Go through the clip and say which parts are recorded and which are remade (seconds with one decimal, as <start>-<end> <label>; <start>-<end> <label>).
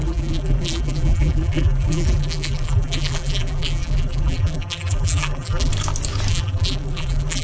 0.0-5.7 remade; 5.7-6.3 recorded; 6.3-7.4 remade